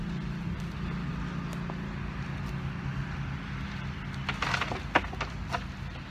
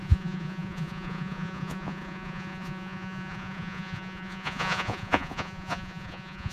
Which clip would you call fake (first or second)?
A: second